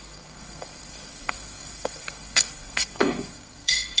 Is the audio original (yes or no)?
no